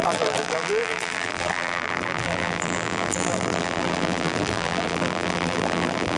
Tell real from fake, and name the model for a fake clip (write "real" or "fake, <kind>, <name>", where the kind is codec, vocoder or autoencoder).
fake, vocoder, BigVGAN v2